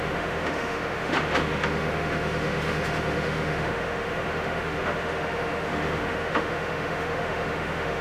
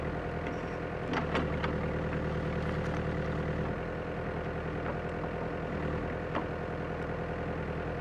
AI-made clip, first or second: first